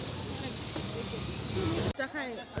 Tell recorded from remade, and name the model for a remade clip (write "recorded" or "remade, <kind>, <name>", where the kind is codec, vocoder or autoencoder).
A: recorded